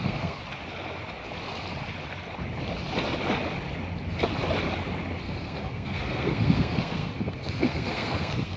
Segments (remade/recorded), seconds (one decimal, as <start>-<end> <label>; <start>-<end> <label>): 0.0-0.4 remade; 0.4-5.2 recorded; 5.2-8.6 remade

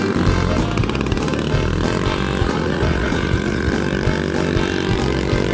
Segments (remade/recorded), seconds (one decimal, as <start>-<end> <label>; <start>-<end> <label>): 0.0-2.4 recorded; 2.4-3.7 remade; 3.7-5.5 recorded

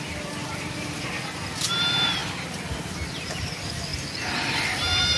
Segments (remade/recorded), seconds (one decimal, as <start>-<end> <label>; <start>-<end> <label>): 0.0-5.2 recorded